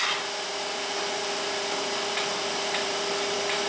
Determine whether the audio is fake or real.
fake